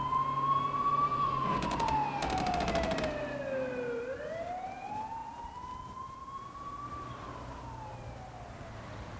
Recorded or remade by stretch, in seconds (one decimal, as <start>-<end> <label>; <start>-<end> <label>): 0.0-1.1 recorded; 1.1-1.9 remade; 1.9-9.2 recorded